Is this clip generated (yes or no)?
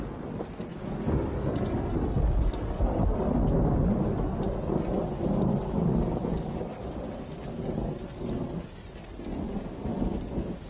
no